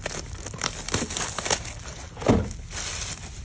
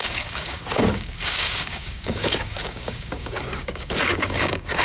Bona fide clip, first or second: first